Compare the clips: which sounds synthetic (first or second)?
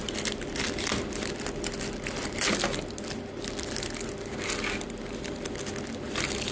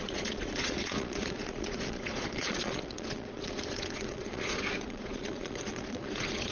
second